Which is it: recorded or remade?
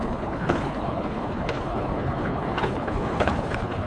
remade